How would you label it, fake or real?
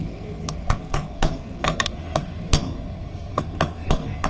fake